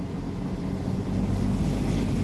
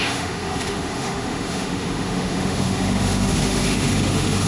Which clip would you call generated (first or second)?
second